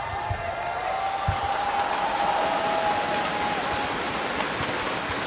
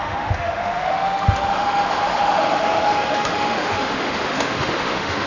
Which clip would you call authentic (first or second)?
first